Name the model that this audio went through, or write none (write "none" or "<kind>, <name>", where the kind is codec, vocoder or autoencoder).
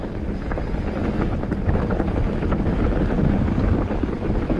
none